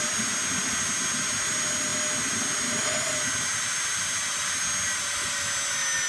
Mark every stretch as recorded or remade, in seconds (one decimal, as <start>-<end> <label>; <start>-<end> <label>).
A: 0.0-6.1 recorded